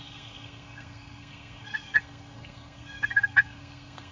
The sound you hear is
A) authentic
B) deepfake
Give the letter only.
B